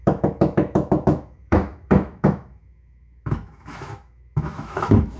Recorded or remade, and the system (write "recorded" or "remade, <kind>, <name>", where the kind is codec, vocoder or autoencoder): remade, autoencoder, DAC-VAE